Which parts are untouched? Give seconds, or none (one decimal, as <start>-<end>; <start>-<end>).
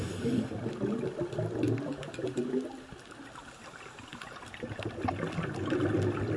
0.0-6.4